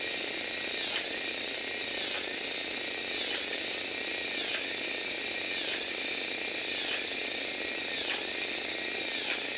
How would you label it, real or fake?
real